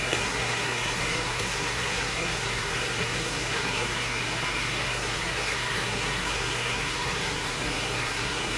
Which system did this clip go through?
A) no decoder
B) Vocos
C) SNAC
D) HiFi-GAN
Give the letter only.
C